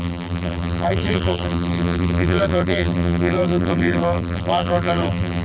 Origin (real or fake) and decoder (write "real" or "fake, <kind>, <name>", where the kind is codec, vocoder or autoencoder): fake, vocoder, BigVGAN v2